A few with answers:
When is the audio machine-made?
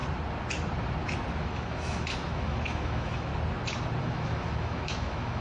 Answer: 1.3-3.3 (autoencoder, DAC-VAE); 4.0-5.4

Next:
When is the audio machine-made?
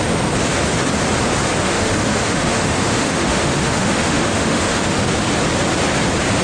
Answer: 1.6-5.1 (autoencoder, DAC-VAE)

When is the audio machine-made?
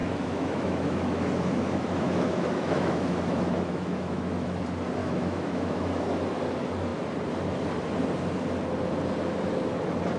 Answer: 0.0-4.6 (autoencoder, DAC-VAE); 5.0-6.4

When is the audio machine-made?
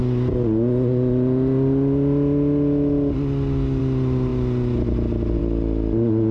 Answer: none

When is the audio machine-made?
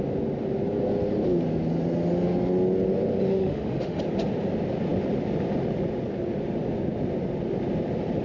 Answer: 3.3-4.0 (autoencoder, DAC-VAE)